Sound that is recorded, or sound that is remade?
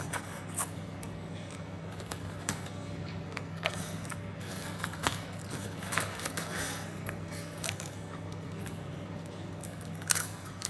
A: remade